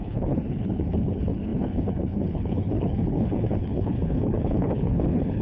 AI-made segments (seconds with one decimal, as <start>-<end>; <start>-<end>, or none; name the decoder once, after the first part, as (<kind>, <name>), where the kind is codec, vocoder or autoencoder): 0.0-5.4 (codec, HILCodec)